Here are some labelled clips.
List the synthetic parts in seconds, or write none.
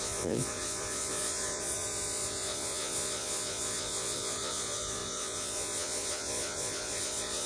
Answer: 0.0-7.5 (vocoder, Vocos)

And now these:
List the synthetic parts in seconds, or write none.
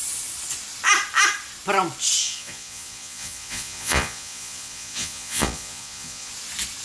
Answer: 2.2-6.3 (vocoder, Vocos)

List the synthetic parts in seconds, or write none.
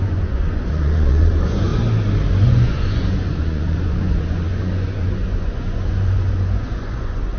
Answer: 0.0-1.7 (vocoder, Vocos); 2.3-7.4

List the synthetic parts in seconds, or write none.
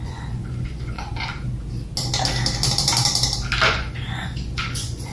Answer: 0.0-1.1 (vocoder, Vocos); 3.7-5.1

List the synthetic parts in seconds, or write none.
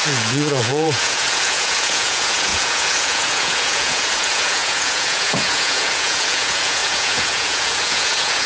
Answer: 0.0-8.5 (vocoder, Vocos)